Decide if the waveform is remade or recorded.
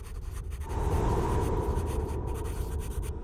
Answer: remade